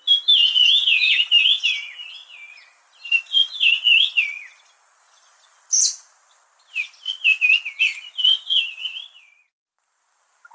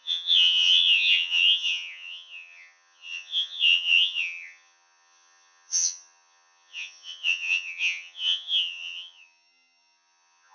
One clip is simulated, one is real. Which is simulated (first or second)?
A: second